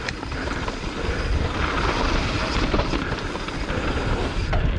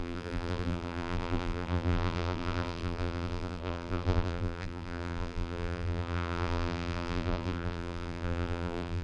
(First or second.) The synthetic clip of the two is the second